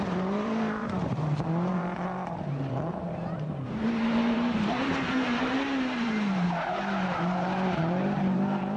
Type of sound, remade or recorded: remade